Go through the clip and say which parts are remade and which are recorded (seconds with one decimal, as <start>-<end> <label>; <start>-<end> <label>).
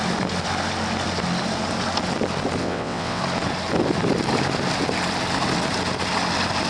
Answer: 0.0-2.6 recorded; 2.6-3.2 remade; 3.2-6.7 recorded